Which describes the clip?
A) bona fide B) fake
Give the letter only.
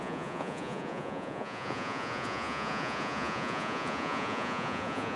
B